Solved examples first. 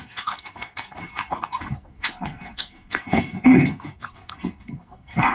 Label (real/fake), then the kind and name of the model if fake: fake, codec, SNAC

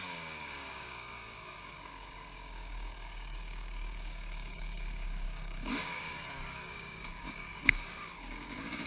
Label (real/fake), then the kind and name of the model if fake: fake, codec, DAC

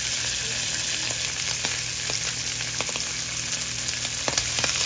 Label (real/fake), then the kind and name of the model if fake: real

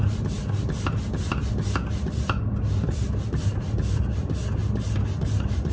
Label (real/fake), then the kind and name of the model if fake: real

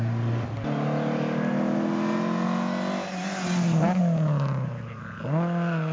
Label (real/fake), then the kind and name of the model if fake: real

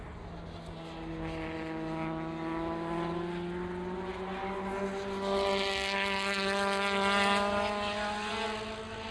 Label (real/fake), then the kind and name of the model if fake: real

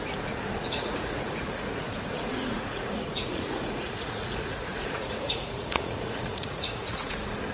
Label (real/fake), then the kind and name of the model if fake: fake, vocoder, Vocos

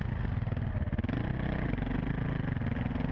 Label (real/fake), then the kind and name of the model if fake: real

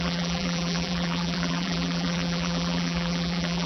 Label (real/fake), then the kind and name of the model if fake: fake, vocoder, BigVGAN v2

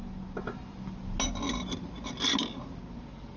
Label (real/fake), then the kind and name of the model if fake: real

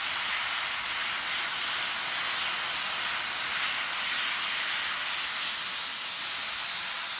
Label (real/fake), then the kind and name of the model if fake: real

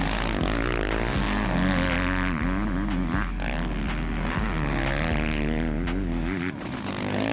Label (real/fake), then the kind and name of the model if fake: real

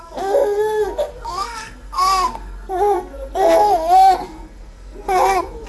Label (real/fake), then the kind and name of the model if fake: fake, codec, SNAC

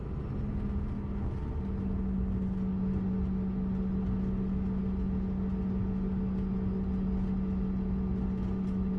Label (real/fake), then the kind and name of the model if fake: real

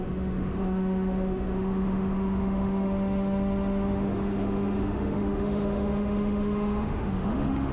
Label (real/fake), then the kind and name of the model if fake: fake, autoencoder, DAC-VAE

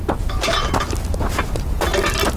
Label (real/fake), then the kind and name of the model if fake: real